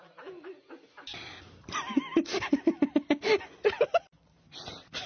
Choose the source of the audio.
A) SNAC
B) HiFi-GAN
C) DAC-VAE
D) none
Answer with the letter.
D